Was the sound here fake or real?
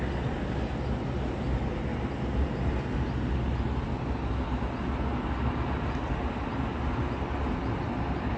real